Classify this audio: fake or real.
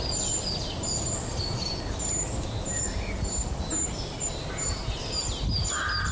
real